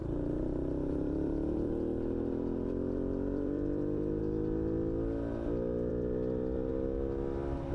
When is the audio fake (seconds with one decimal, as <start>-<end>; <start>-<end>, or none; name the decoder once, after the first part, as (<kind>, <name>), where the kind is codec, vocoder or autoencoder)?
0.0-4.2 (vocoder, BigVGAN v2); 5.9-6.7